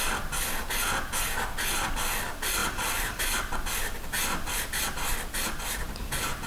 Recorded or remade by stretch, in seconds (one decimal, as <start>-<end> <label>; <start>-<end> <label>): 0.0-2.6 recorded; 2.6-4.6 remade; 4.6-5.1 recorded; 5.1-6.0 remade; 6.0-6.5 recorded